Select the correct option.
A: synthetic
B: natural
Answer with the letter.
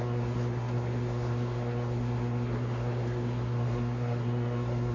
A